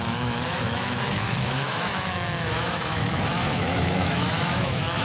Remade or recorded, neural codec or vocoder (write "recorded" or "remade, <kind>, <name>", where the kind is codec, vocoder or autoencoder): remade, autoencoder, DAC-VAE